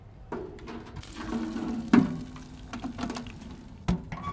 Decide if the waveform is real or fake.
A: real